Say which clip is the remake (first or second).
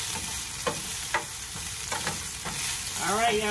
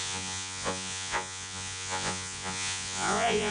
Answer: second